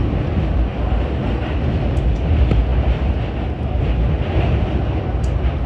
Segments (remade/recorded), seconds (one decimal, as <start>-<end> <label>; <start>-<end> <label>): 0.0-5.7 recorded